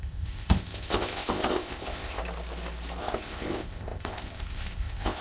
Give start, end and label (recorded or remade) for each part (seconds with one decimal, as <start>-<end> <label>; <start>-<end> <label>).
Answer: 0.0-2.2 remade; 2.2-3.0 recorded; 3.0-5.2 remade